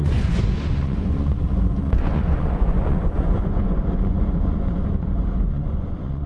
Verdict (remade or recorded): remade